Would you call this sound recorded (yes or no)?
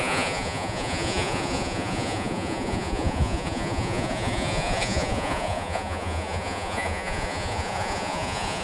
no